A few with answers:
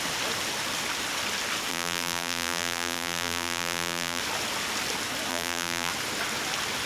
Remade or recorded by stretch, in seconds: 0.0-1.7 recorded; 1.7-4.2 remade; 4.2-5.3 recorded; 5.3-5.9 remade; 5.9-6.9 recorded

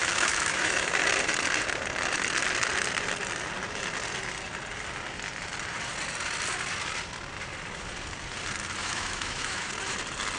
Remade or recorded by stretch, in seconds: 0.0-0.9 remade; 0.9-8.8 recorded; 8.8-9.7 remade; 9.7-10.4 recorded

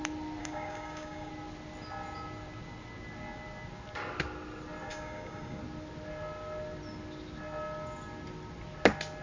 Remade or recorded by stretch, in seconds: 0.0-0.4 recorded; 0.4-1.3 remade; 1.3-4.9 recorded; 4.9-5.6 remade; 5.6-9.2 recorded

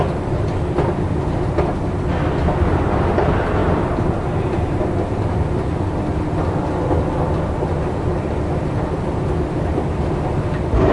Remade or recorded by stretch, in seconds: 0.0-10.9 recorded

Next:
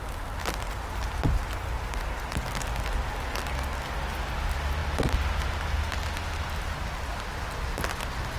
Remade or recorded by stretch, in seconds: 0.0-8.4 recorded